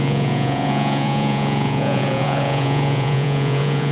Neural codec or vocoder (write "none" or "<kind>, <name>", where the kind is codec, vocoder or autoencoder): vocoder, Vocos